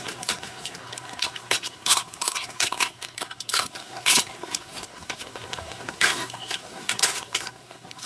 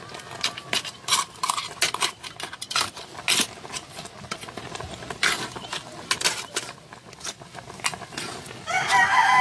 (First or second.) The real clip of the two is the second